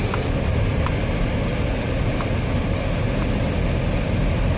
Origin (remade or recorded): recorded